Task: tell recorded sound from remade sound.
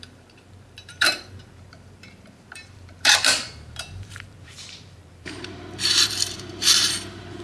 remade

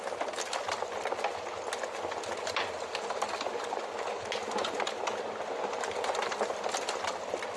recorded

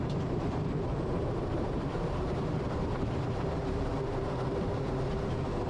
remade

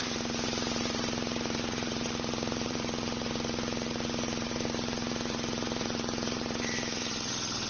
remade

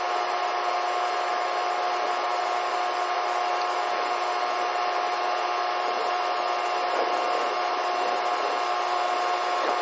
recorded